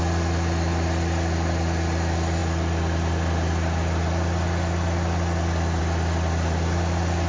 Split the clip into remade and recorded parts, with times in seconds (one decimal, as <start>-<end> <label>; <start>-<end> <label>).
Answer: 0.0-7.3 recorded